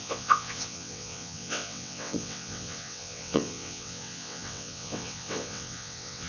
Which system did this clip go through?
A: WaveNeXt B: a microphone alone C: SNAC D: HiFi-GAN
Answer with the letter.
A